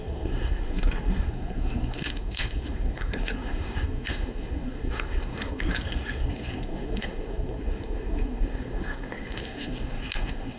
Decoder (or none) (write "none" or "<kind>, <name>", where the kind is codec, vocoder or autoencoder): codec, SNAC